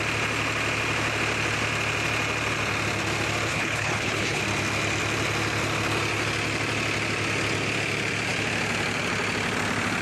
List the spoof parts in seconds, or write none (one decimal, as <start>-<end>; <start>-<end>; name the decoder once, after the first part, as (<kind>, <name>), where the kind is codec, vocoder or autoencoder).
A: 3.5-4.4 (codec, HILCodec)